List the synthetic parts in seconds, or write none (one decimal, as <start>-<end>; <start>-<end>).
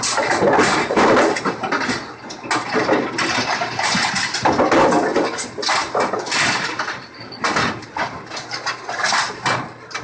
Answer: none